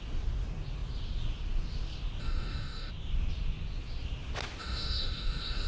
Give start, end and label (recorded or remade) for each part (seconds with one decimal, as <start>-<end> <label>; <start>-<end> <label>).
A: 0.0-2.2 recorded; 2.2-2.9 remade; 2.9-4.6 recorded; 4.6-5.7 remade

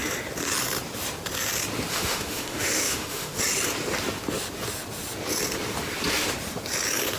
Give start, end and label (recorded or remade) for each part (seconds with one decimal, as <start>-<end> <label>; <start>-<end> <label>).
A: 0.0-1.9 recorded; 1.9-3.4 remade; 3.4-7.2 recorded

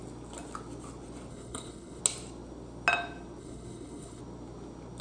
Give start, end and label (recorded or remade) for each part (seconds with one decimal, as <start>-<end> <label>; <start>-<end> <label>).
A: 0.0-1.3 recorded; 1.3-2.0 remade; 2.0-3.4 recorded; 3.4-4.2 remade; 4.2-5.0 recorded